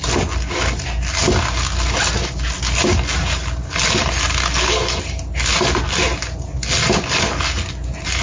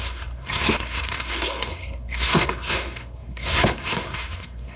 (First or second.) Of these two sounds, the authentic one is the first